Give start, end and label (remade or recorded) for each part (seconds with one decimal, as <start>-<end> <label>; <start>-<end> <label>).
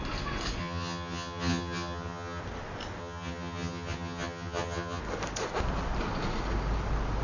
0.0-0.6 recorded; 0.6-2.4 remade; 2.4-3.0 recorded; 3.0-5.0 remade; 5.0-7.2 recorded